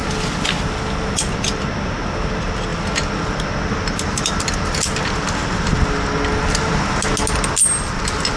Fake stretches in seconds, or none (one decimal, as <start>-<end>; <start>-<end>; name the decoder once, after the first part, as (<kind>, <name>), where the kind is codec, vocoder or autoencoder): none